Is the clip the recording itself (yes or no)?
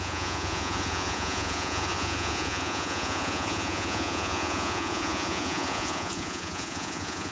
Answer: no